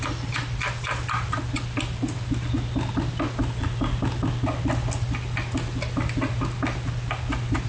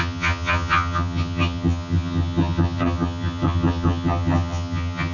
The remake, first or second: second